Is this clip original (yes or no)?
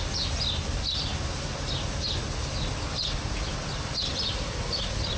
yes